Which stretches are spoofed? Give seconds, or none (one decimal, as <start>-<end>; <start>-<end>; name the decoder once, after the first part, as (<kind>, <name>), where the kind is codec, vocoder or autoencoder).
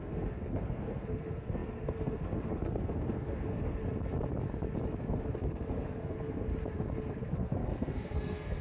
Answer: 0.0-3.8 (codec, SNAC); 5.0-6.5; 7.1-8.6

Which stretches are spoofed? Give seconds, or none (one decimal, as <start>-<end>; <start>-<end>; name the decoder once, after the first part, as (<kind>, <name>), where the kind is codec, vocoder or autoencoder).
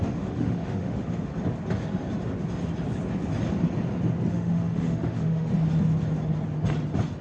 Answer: 0.0-1.3 (autoencoder, DAC-VAE); 4.3-5.5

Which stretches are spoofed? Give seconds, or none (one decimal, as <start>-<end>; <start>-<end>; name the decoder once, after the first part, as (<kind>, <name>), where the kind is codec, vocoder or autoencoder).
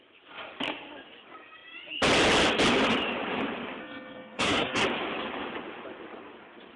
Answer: 3.8-4.8 (codec, SNAC)